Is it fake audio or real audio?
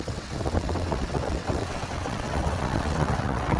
fake